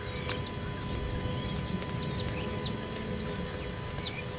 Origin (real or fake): real